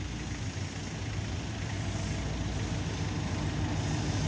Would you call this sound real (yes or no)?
yes